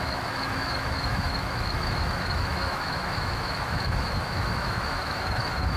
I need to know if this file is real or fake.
fake